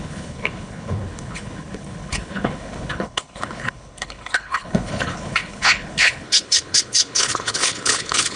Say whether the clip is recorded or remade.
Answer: remade